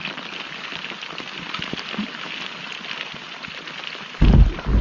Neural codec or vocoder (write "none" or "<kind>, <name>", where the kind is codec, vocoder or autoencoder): none